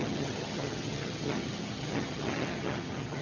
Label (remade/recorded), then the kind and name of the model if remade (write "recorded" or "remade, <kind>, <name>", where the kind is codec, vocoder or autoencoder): remade, vocoder, HiFi-GAN